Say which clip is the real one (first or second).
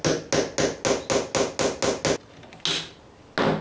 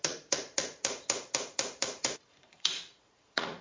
first